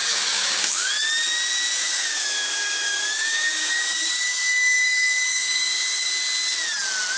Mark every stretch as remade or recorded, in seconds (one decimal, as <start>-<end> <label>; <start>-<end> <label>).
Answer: 0.0-0.9 remade; 0.9-1.8 recorded; 1.8-6.1 remade; 6.1-7.2 recorded